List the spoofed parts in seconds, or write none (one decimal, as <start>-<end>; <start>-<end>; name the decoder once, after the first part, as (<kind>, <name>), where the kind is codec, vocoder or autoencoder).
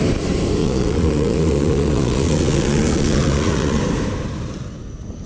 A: 0.6-3.8 (vocoder, Vocos)